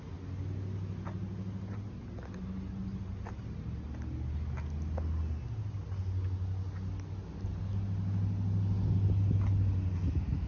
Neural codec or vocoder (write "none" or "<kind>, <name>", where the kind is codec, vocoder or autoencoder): none